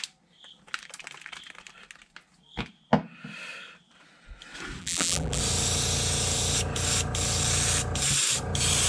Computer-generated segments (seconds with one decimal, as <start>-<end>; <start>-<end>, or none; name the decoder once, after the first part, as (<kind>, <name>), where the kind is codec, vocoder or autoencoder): 4.8-5.4 (vocoder, BigVGAN v2)